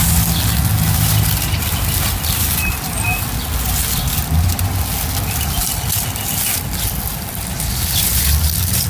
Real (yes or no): yes